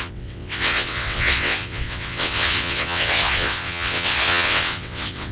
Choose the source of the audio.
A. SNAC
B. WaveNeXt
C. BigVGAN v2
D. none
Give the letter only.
B